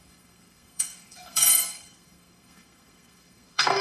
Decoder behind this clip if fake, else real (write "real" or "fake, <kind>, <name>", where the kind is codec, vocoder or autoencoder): fake, codec, SNAC